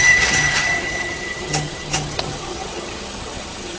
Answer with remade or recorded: remade